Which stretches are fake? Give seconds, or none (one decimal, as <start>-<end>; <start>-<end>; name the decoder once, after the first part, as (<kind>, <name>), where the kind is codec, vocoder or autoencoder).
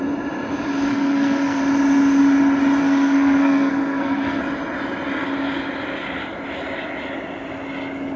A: 0.9-1.6 (codec, SNAC); 2.8-4.4